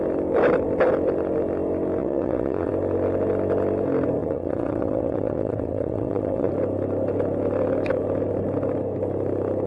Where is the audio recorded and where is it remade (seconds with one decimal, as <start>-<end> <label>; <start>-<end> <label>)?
0.0-2.0 recorded; 2.0-2.7 remade; 2.7-4.2 recorded; 4.2-6.5 remade; 6.5-9.7 recorded